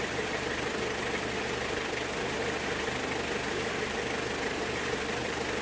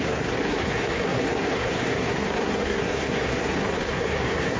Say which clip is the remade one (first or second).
second